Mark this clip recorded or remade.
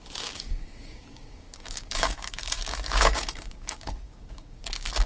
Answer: remade